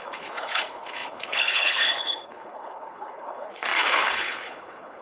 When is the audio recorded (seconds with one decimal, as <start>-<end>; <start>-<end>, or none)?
none